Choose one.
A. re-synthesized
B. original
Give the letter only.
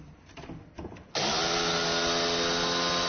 B